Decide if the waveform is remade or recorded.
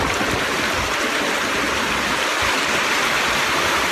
recorded